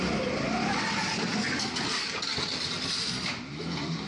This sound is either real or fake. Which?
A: fake